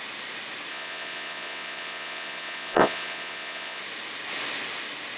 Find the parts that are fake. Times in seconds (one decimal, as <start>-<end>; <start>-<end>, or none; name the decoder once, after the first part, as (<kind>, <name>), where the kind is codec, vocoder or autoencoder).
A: 0.7-3.8 (vocoder, Vocos)